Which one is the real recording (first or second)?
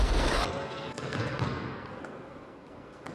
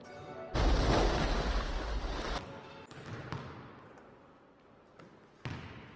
second